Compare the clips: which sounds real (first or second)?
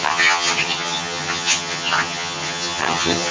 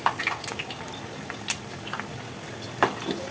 second